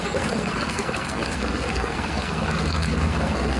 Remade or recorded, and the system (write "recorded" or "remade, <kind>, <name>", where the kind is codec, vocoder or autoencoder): remade, codec, SNAC